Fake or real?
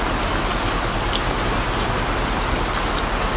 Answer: real